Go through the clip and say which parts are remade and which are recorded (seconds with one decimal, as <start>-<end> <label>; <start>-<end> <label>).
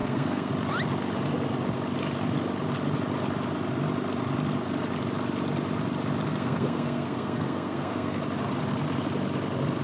0.0-0.5 remade; 0.5-6.3 recorded; 6.3-8.2 remade; 8.2-9.8 recorded